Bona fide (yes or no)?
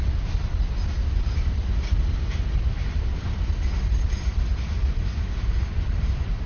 yes